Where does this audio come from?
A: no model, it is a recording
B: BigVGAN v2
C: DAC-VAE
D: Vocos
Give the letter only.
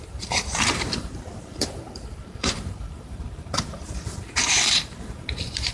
B